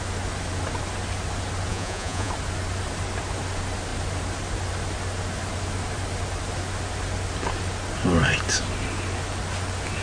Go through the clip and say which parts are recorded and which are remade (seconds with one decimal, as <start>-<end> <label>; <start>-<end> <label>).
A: 0.0-1.7 recorded; 1.7-2.3 remade; 2.3-10.0 recorded